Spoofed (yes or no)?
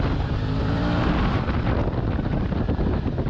no